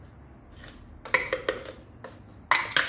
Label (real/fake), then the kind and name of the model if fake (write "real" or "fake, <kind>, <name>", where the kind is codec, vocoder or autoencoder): real